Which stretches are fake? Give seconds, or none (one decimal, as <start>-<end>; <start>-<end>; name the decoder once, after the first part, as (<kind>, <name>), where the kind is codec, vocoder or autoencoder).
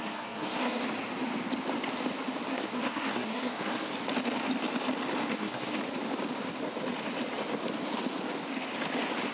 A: 0.0-0.8 (codec, SNAC); 2.5-3.9; 5.3-5.8